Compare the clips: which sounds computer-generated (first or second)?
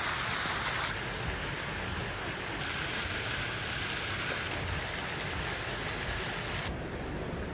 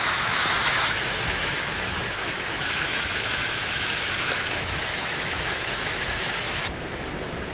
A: second